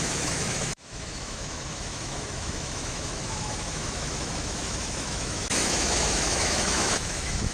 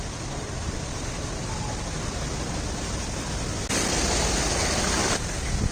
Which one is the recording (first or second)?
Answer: second